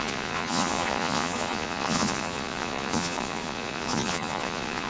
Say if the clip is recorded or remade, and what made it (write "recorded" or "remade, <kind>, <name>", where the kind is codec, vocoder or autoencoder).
remade, vocoder, Vocos